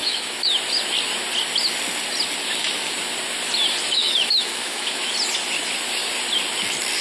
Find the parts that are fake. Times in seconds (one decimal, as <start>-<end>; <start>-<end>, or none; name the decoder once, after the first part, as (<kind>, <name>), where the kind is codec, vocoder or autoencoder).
0.0-0.5 (autoencoder, DAC-VAE); 3.8-5.1